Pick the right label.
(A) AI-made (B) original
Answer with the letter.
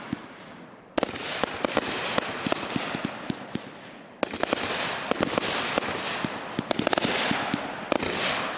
B